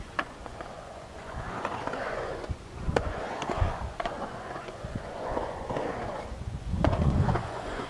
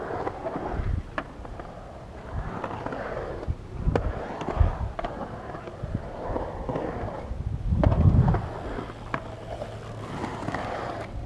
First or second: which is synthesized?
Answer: first